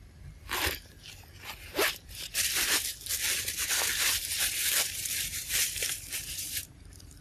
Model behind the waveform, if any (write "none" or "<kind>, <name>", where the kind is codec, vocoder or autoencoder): vocoder, BigVGAN v2